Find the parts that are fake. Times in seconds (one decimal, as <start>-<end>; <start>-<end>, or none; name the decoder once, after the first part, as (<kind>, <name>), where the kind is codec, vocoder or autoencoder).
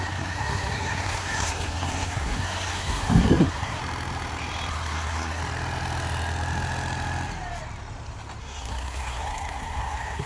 0.0-3.8 (codec, SNAC); 4.7-5.4; 8.4-10.3